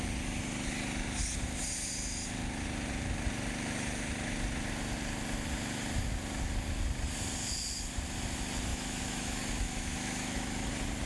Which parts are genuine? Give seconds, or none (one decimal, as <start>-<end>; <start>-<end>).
0.0-8.7; 10.7-11.1